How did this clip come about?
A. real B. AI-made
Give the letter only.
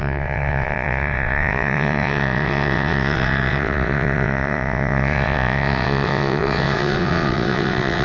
B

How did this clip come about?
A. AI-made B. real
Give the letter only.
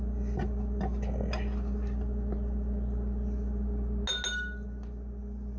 B